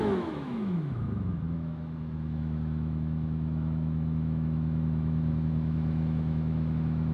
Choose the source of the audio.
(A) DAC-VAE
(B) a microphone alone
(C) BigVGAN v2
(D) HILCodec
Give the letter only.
A